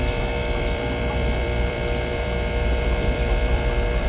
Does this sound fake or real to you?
fake